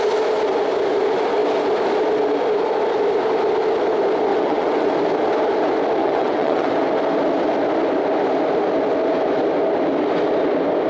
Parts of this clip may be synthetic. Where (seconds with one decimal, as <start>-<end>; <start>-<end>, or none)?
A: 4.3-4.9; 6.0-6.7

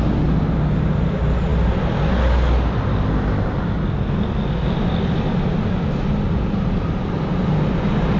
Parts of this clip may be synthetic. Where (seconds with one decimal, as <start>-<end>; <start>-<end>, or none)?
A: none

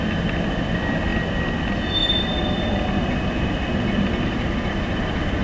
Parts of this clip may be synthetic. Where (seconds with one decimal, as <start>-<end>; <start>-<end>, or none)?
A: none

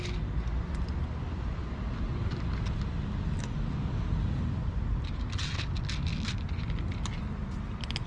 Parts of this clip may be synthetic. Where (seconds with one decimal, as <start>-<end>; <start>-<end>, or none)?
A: none